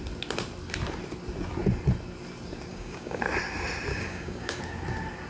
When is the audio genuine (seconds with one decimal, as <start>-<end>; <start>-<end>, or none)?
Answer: 0.0-2.7; 3.2-3.9; 4.6-5.3